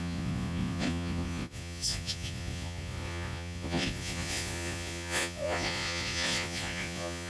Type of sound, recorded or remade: remade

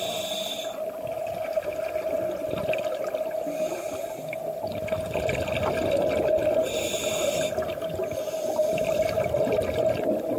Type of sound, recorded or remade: recorded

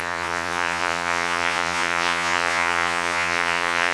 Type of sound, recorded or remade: remade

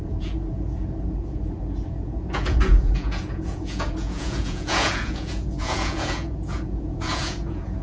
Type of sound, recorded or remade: remade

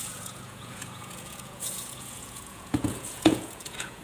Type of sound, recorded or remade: remade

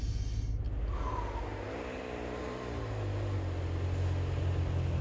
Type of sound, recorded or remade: recorded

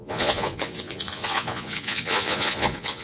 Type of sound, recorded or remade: remade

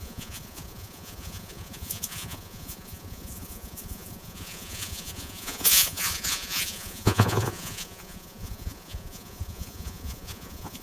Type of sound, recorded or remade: remade